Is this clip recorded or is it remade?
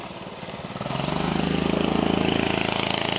recorded